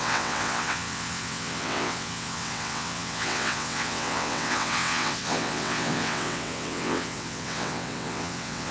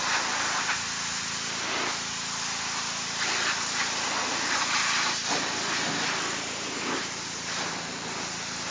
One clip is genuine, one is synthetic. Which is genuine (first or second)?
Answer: second